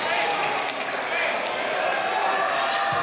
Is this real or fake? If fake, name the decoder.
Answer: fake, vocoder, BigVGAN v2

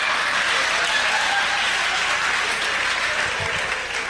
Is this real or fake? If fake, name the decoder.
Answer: real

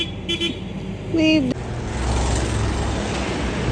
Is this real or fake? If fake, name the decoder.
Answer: real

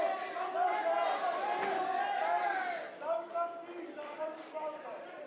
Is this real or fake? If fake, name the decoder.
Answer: fake, vocoder, BigVGAN v2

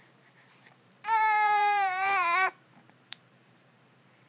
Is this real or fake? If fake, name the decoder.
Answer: fake, vocoder, BigVGAN v2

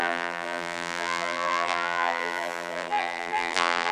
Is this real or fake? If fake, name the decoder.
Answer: fake, vocoder, BigVGAN v2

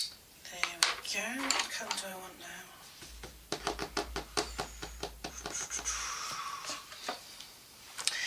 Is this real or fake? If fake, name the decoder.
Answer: fake, vocoder, BigVGAN v2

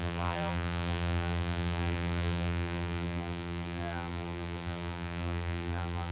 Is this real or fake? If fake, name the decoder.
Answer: fake, vocoder, BigVGAN v2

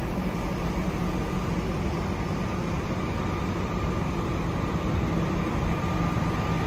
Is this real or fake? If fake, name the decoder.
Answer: real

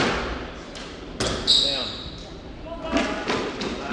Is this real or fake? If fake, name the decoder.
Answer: real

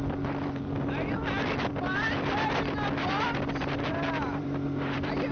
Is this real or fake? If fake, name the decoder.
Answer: fake, vocoder, BigVGAN v2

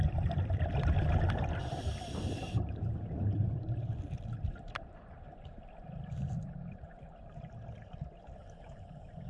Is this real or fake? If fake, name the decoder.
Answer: fake, vocoder, BigVGAN v2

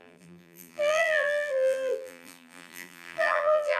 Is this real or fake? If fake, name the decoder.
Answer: fake, vocoder, BigVGAN v2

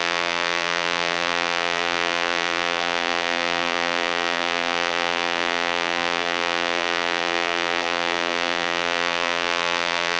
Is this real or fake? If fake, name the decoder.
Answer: fake, vocoder, BigVGAN v2